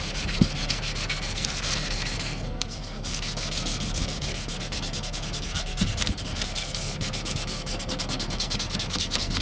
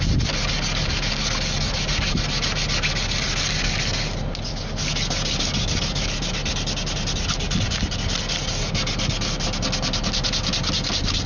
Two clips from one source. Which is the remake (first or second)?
first